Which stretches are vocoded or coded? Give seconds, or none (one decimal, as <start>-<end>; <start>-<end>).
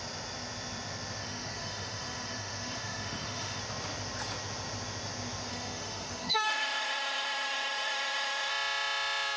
1.2-3.6; 5.5-8.5